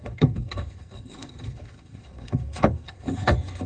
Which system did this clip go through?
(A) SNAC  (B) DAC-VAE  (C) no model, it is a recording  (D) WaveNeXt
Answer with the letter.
A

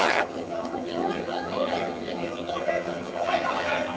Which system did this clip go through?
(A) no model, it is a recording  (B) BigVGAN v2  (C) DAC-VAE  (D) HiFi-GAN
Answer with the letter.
D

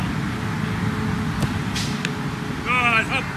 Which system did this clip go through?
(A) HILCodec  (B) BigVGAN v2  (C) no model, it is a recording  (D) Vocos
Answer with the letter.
C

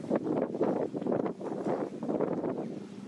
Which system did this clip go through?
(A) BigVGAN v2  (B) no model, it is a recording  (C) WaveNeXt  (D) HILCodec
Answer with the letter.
B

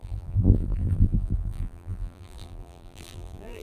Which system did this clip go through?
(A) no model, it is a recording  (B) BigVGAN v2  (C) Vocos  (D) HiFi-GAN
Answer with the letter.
B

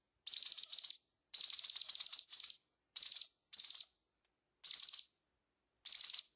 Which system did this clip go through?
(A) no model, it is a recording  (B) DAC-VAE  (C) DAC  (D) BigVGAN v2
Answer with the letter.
D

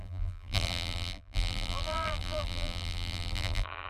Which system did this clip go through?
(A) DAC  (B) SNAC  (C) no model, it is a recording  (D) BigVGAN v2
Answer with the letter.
D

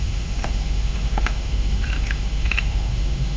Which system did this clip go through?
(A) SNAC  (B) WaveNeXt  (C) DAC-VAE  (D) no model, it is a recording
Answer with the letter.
C